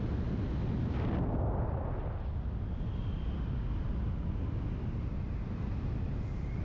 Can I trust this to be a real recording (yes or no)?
yes